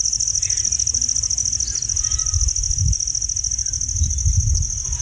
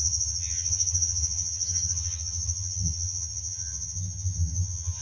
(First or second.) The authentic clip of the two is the first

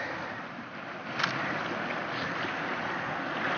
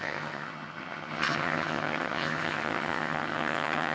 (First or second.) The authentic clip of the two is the first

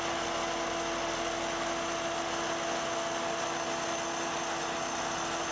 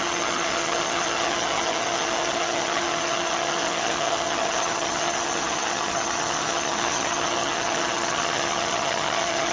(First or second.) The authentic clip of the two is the first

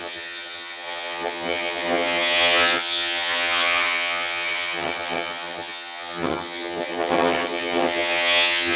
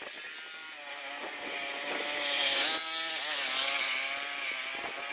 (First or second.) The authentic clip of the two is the second